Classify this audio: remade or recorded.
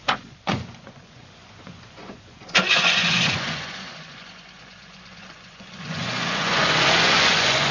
remade